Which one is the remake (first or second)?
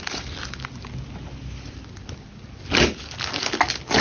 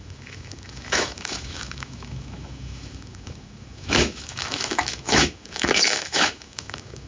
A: second